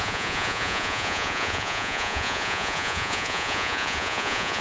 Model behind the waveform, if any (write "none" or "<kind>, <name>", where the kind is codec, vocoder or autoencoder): vocoder, Vocos